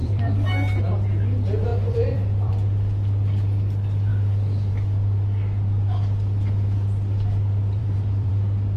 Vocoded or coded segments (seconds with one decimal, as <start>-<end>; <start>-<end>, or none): 0.0-0.8; 1.7-2.5; 7.8-8.3